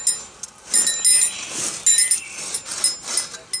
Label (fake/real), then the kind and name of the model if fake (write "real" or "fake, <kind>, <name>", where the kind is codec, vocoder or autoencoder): real